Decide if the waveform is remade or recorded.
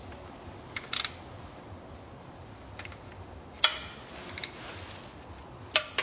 recorded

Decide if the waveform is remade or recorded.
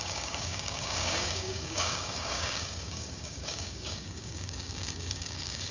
remade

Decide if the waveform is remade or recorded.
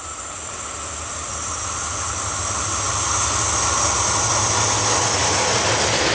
recorded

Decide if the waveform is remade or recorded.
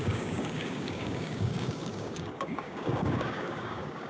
remade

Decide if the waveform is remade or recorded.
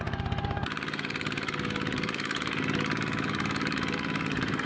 remade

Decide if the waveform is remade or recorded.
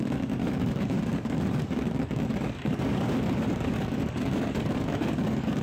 remade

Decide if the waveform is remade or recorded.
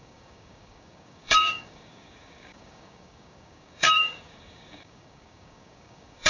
remade